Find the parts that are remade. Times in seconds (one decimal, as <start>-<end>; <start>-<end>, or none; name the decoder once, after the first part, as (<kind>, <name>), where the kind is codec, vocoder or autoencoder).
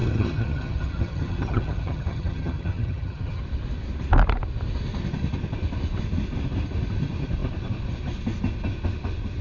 0.0-3.4 (vocoder, HiFi-GAN)